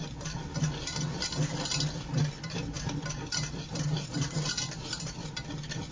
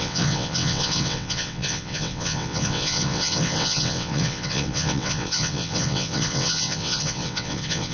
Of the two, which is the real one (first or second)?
first